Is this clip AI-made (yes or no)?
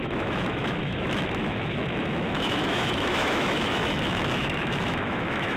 yes